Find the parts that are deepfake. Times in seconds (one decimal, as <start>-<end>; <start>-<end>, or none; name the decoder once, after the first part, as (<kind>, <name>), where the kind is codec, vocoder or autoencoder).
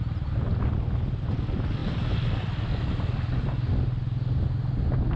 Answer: none